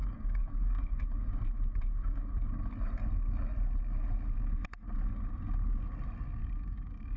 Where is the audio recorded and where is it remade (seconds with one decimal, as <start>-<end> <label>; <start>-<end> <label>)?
0.0-1.3 remade; 1.3-6.4 recorded; 6.4-7.2 remade